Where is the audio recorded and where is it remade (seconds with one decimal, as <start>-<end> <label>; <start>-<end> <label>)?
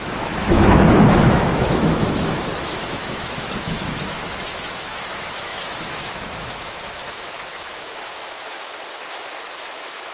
0.0-10.1 remade